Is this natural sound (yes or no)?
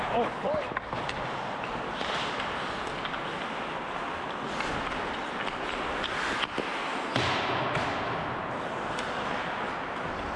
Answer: yes